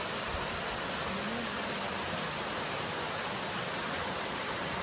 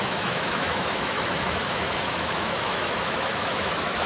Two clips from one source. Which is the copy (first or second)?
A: second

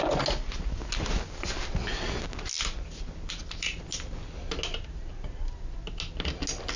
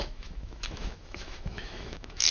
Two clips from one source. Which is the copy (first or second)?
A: second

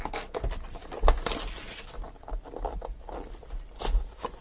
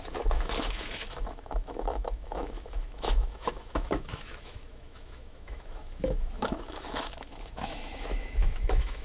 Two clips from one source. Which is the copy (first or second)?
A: second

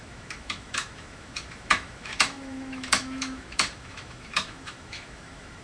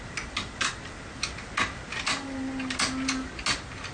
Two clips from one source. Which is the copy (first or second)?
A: first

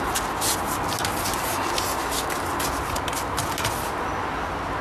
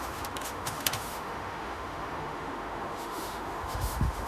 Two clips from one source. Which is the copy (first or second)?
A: second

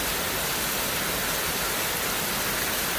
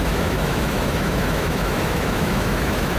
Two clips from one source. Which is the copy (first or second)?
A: second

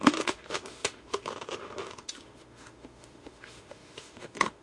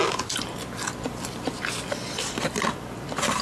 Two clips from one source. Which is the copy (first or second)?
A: first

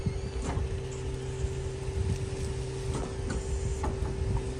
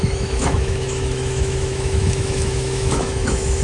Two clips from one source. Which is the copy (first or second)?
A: second